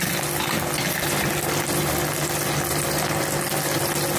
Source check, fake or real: real